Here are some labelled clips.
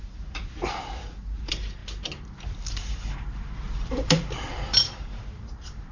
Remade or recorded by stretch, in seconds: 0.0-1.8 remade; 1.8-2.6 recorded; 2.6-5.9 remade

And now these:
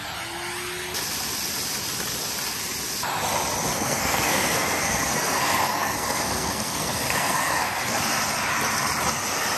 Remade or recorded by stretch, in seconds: 0.0-3.7 recorded; 3.7-8.0 remade; 8.0-9.6 recorded

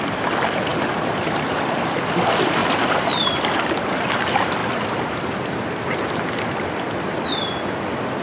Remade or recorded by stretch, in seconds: 0.0-8.2 remade

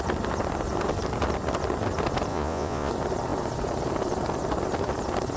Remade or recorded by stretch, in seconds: 0.0-2.3 recorded; 2.3-2.9 remade; 2.9-5.4 recorded

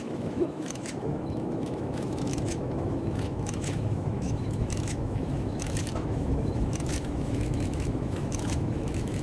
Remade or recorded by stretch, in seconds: 0.0-9.2 remade

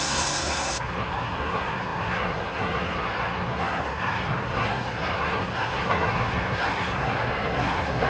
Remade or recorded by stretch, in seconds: 0.0-8.1 remade

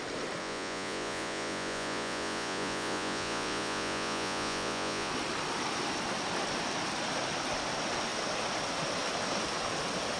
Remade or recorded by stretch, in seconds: 0.0-0.4 recorded; 0.4-5.1 remade; 5.1-10.2 recorded

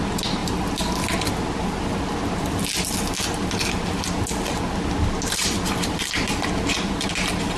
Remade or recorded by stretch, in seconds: 0.0-7.6 recorded